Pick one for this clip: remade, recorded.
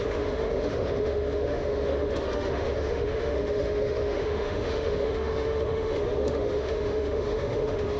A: remade